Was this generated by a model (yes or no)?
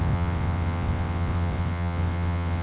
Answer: yes